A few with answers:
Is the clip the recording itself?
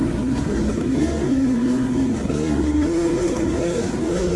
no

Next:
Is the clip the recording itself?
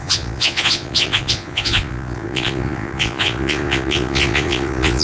no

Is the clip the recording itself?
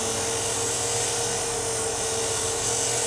yes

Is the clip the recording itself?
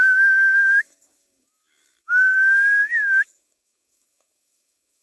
no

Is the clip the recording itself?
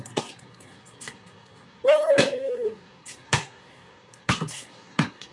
no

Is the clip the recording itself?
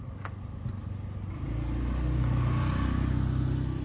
yes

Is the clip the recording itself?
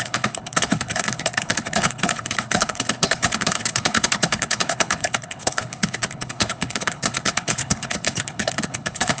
no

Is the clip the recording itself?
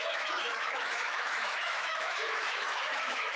no